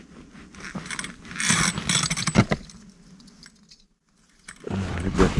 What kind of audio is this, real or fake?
real